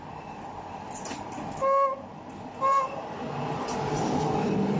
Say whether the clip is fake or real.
real